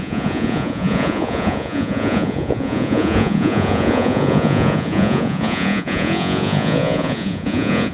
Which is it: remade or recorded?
remade